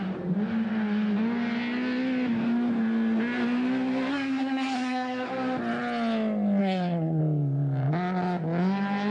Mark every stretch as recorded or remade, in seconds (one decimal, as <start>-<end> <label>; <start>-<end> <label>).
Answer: 0.0-4.1 recorded; 4.1-5.3 remade; 5.3-6.6 recorded; 6.6-7.2 remade; 7.2-9.1 recorded